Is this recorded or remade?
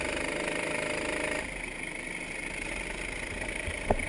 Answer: recorded